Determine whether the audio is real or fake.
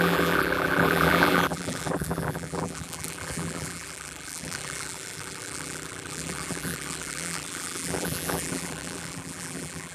fake